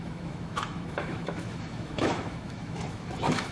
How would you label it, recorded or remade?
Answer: remade